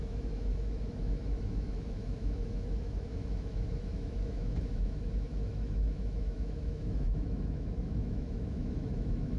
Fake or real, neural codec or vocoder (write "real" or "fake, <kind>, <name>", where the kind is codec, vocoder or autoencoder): fake, autoencoder, DAC-VAE